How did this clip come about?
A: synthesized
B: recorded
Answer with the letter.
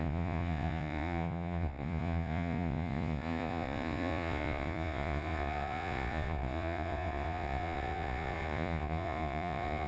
A